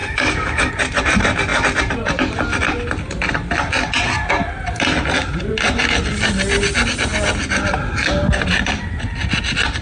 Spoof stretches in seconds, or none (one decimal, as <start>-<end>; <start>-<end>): 0.0-0.7